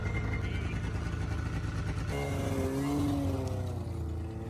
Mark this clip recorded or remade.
recorded